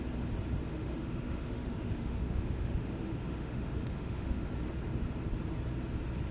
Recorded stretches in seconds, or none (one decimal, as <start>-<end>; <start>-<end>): 0.0-0.7; 4.5-6.3